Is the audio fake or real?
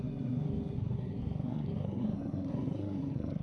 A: fake